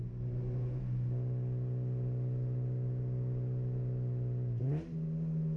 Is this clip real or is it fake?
real